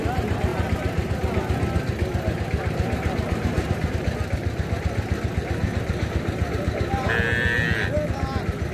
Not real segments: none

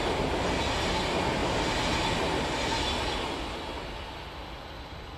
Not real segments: none

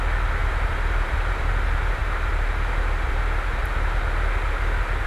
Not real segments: 0.4-1.5 (vocoder, BigVGAN v2); 2.0-3.7

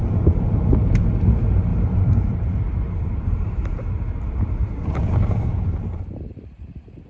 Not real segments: 1.7-6.0 (vocoder, BigVGAN v2)

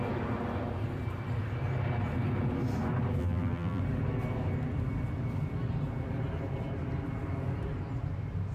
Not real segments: 3.2-3.8 (vocoder, BigVGAN v2)

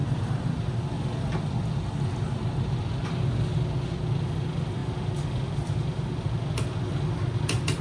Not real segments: 0.0-0.8 (vocoder, BigVGAN v2)